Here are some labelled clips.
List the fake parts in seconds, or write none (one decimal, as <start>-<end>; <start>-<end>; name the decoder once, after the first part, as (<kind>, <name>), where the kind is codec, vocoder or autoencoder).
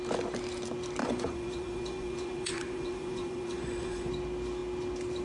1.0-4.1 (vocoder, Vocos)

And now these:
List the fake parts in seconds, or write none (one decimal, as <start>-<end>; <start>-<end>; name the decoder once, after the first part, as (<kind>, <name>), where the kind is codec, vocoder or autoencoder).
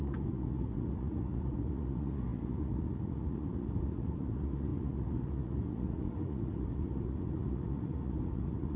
0.0-8.8 (vocoder, Vocos)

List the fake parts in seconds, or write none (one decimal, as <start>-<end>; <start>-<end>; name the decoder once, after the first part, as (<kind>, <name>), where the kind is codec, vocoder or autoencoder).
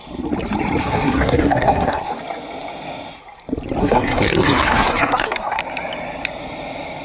0.8-2.1 (codec, SNAC); 3.8-5.6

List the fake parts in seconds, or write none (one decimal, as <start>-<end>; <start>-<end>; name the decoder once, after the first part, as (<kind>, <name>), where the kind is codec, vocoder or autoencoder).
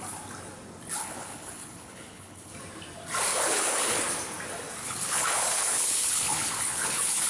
1.0-2.5 (codec, HILCodec); 3.3-4.0; 4.8-7.3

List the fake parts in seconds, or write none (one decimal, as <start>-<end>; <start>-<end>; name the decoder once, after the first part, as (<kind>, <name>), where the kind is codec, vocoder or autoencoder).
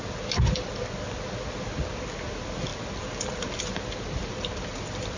none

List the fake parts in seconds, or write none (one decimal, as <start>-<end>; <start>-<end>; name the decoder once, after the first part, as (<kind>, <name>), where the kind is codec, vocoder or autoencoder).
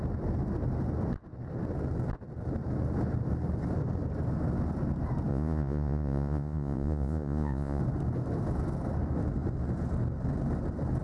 5.3-7.8 (vocoder, Vocos)